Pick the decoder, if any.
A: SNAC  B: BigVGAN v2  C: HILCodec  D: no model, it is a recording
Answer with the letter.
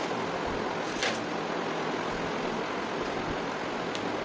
D